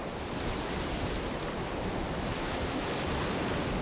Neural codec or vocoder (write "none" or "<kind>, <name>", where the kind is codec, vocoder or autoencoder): none